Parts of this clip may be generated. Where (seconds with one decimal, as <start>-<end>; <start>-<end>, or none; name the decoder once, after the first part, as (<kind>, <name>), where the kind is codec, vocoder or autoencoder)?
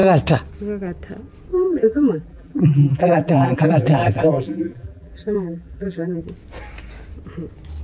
1.5-6.2 (vocoder, BigVGAN v2)